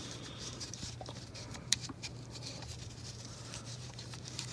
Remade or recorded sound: remade